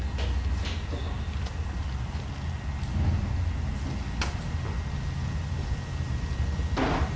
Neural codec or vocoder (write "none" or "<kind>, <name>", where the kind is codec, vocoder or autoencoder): none